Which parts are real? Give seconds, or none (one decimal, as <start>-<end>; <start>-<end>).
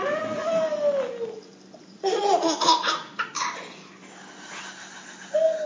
0.0-1.8; 3.3-5.7